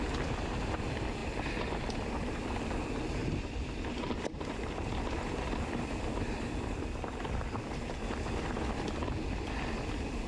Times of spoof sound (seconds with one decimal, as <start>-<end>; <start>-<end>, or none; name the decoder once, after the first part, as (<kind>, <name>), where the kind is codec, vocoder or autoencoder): 1.2-1.8 (vocoder, BigVGAN v2); 3.2-7.5